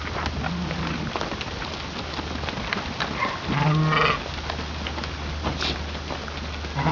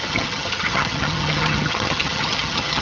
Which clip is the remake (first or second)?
second